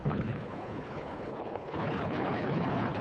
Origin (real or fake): fake